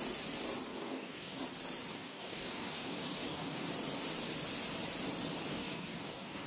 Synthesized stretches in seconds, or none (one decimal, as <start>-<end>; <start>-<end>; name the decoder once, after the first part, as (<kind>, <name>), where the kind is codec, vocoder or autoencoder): 0.7-1.4 (codec, DAC); 1.9-3.7; 5.5-6.5